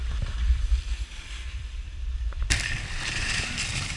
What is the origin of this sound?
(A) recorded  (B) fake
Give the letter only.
B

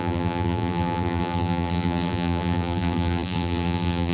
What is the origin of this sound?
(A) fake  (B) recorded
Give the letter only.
A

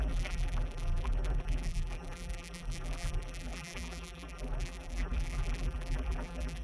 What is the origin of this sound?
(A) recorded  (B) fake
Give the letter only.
B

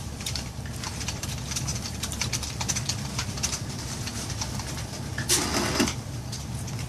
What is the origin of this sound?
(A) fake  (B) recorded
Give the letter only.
A